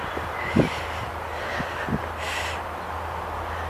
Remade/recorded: recorded